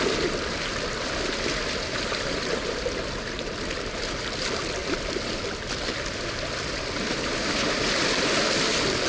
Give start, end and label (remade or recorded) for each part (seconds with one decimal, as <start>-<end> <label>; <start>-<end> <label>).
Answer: 0.0-9.1 recorded

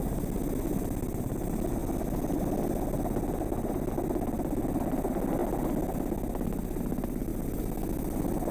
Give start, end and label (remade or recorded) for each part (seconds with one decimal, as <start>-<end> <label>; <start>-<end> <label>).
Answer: 0.0-8.5 recorded

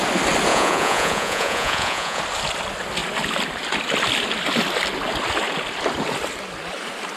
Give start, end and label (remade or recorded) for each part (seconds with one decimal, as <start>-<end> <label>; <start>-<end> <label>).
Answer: 0.0-0.5 recorded; 0.5-2.2 remade; 2.2-7.2 recorded

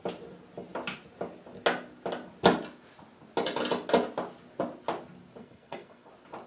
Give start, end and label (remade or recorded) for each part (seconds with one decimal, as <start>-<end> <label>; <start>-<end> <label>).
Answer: 0.0-5.4 recorded; 5.4-6.1 remade; 6.1-6.5 recorded

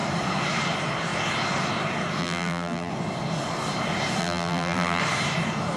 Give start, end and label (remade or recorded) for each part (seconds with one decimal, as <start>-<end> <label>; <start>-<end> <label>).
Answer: 0.0-2.2 recorded; 2.2-2.9 remade; 2.9-4.2 recorded; 4.2-5.0 remade; 5.0-5.8 recorded

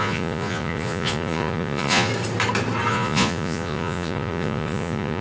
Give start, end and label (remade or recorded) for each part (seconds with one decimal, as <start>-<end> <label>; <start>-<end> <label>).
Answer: 0.0-2.1 remade; 2.1-2.9 recorded; 2.9-5.2 remade

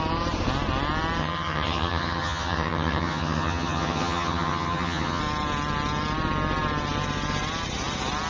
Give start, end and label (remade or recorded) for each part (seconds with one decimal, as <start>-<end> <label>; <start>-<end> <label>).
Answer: 0.0-1.2 recorded; 1.2-5.2 remade; 5.2-8.3 recorded